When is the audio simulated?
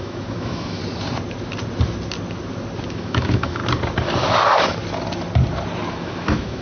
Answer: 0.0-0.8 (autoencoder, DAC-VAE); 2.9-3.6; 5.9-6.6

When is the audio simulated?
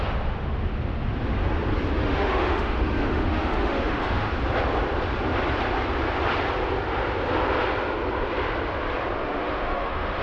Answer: 2.0-4.3 (autoencoder, DAC-VAE); 9.2-10.2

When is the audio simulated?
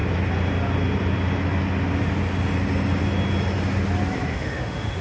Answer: 4.3-5.0 (autoencoder, DAC-VAE)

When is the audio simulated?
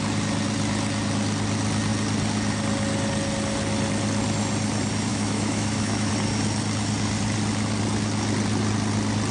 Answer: 5.1-6.1 (autoencoder, DAC-VAE)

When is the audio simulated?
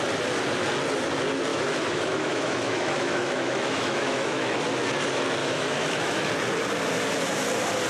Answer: 1.5-4.6 (autoencoder, DAC-VAE); 5.4-6.3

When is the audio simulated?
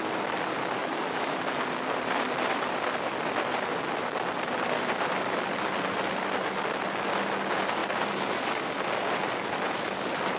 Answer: 0.8-1.4 (autoencoder, DAC-VAE)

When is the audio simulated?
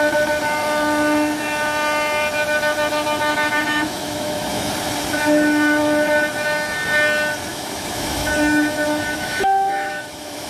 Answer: 3.3-4.7 (autoencoder, DAC-VAE); 7.5-10.5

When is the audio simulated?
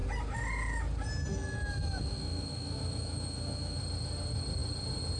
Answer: 1.3-3.8 (autoencoder, DAC-VAE)